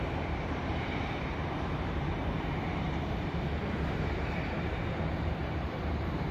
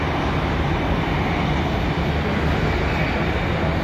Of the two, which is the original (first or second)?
second